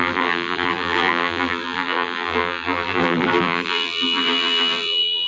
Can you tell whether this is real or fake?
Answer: fake